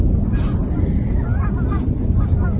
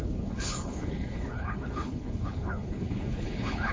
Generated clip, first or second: second